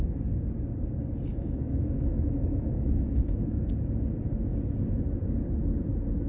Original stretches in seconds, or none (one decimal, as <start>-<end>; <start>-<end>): 0.0-1.3; 3.7-6.3